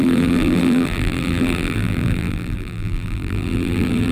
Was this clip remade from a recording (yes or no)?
yes